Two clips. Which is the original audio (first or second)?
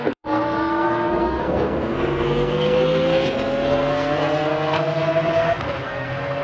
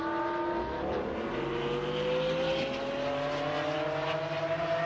second